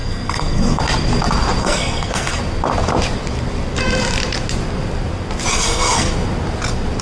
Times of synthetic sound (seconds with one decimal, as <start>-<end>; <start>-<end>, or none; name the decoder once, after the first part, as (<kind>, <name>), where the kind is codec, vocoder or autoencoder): 0.0-0.8 (codec, SNAC); 1.6-2.4; 5.5-6.1